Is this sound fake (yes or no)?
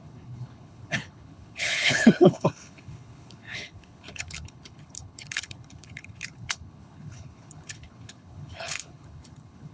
yes